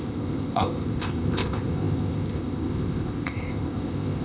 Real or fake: fake